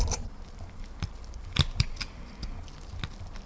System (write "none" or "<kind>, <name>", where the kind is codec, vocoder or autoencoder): none